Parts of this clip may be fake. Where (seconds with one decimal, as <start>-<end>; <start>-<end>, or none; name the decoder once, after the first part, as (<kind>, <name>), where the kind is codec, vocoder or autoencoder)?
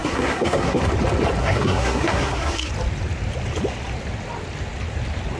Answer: 0.0-0.8 (codec, SNAC); 1.4-2.7